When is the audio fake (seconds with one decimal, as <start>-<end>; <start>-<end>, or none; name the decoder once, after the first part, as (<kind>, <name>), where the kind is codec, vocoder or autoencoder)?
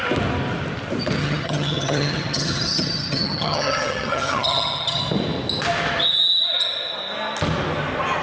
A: 1.2-5.0 (vocoder, HiFi-GAN)